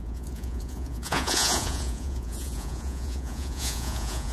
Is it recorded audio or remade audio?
remade